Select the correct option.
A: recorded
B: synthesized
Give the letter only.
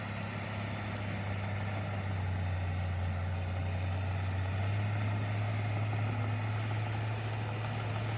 A